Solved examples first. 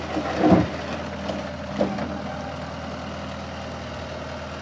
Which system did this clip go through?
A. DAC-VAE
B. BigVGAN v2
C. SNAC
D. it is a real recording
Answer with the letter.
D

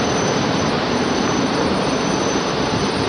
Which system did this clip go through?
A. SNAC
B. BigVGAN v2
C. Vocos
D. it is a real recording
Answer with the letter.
B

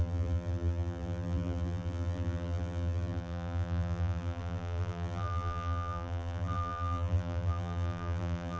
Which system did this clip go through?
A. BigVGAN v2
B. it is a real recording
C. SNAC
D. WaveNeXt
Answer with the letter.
A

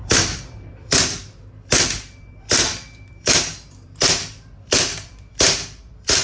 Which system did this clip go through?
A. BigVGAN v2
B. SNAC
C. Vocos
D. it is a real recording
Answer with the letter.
A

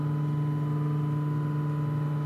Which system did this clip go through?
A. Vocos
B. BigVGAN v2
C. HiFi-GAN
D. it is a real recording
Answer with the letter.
D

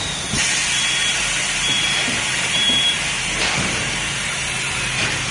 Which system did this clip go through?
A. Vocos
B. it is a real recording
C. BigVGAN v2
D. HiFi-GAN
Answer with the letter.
C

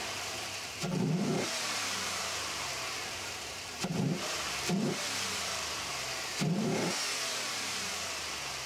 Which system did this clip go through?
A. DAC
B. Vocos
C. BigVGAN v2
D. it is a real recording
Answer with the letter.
C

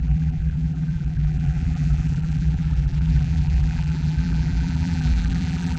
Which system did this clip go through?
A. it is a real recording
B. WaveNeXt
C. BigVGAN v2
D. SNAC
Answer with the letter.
C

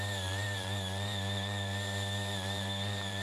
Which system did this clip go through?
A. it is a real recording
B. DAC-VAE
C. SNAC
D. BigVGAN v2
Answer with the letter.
D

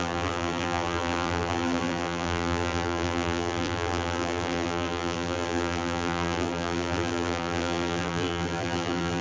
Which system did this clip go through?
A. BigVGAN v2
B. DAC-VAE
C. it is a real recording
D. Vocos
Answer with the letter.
A